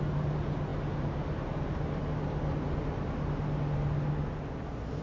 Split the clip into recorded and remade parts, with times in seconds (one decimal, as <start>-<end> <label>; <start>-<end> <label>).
0.0-5.0 recorded